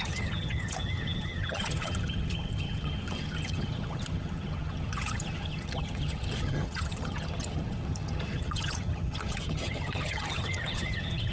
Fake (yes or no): yes